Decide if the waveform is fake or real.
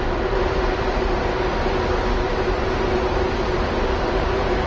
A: real